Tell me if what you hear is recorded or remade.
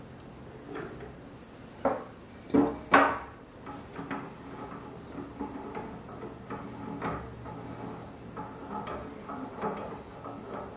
recorded